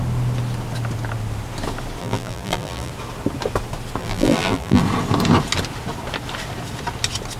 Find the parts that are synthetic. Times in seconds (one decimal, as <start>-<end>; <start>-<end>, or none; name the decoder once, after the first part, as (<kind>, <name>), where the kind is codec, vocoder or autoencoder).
2.0-2.9 (vocoder, BigVGAN v2); 4.0-4.8